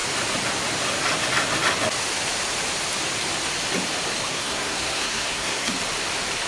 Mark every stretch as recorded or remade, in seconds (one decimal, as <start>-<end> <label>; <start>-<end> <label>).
0.0-4.3 recorded; 4.3-5.7 remade; 5.7-6.5 recorded